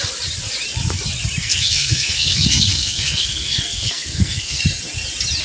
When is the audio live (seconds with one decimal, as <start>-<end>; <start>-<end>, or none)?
0.0-1.4; 4.6-5.4